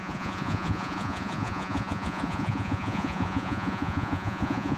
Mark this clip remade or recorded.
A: remade